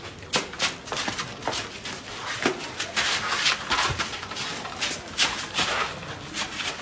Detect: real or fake real